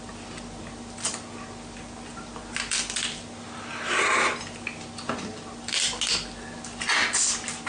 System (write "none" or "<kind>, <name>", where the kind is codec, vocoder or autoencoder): none